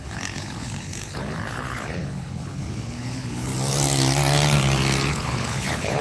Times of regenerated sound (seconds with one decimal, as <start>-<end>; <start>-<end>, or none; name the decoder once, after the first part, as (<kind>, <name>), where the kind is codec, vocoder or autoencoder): 0.0-3.5 (codec, HILCodec); 5.1-6.0